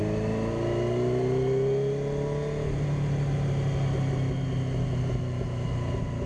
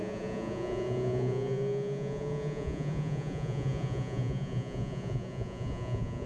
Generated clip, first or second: second